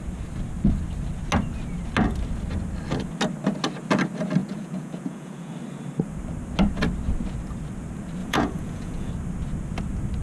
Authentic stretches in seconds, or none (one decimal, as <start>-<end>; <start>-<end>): 0.0-4.4; 5.5-8.2; 9.1-10.2

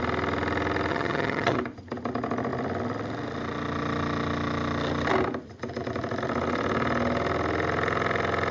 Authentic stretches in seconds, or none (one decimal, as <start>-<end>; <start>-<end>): 0.0-0.9; 1.6-8.5